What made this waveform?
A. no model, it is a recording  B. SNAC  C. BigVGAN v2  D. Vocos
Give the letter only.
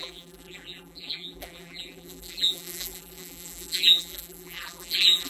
C